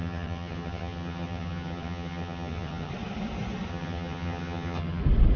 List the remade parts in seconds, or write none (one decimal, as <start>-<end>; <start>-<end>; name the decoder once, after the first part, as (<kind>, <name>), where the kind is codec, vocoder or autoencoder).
0.0-2.9 (vocoder, HiFi-GAN); 3.7-5.0

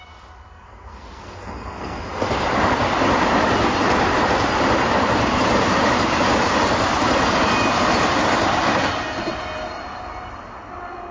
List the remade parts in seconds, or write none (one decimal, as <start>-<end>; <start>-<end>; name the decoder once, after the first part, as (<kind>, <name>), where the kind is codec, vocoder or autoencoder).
0.5-2.0 (codec, SNAC)